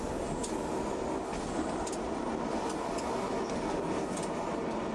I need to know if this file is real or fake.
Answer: real